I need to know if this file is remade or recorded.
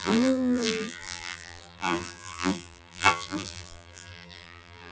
remade